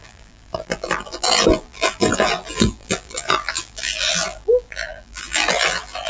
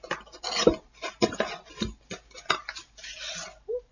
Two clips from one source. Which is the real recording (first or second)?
second